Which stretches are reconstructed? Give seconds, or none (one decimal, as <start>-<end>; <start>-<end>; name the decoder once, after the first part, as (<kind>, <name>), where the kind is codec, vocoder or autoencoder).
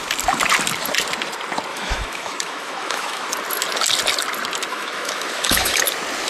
1.7-3.3 (autoencoder, DAC-VAE); 4.7-5.8